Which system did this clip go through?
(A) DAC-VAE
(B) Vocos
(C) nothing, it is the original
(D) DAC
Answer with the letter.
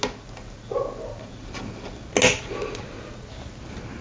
C